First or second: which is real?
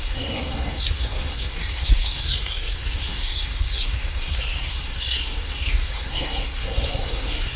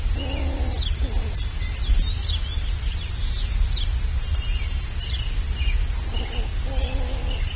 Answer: second